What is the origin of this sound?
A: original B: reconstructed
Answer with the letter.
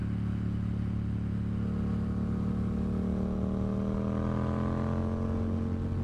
A